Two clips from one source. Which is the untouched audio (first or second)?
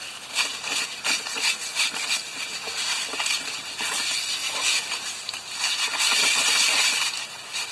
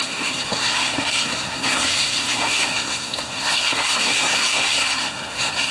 first